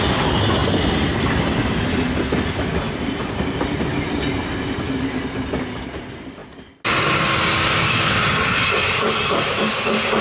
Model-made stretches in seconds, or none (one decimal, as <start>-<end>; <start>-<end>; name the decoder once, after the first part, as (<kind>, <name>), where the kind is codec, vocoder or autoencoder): none